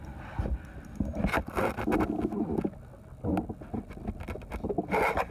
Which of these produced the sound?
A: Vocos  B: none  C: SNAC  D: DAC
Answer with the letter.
B